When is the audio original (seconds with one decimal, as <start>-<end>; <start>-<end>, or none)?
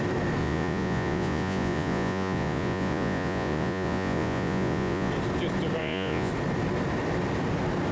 0.0-0.4; 5.1-5.8; 6.3-7.9